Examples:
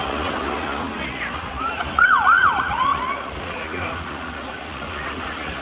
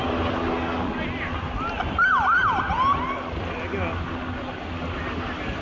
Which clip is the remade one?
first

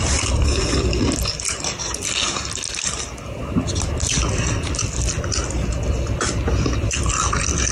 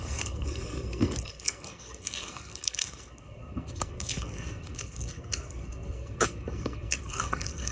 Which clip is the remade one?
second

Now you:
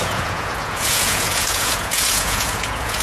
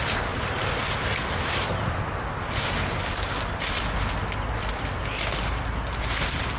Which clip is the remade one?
first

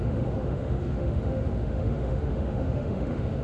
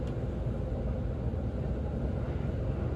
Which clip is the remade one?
first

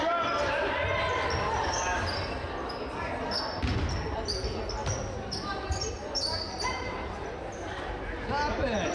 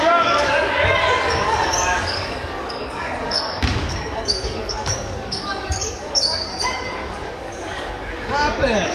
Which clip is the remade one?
second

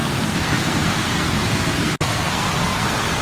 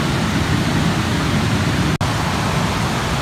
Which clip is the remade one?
first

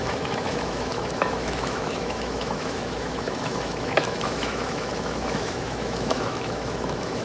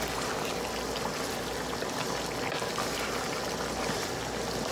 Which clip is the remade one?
first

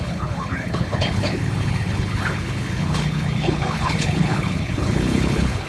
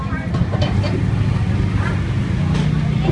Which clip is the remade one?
first